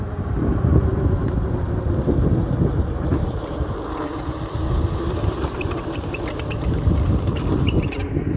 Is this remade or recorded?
remade